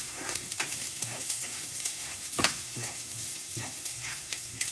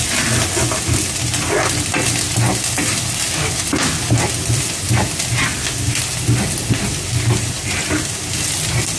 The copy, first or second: first